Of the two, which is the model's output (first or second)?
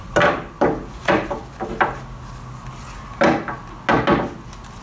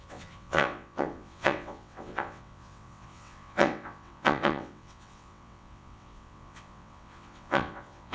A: second